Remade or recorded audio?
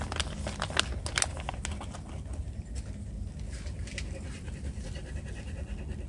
recorded